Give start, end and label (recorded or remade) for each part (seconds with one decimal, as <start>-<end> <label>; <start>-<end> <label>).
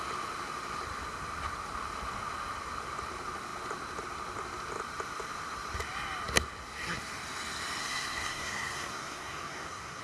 0.0-7.8 recorded; 7.8-10.0 remade